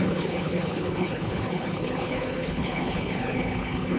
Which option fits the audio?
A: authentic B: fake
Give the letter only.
B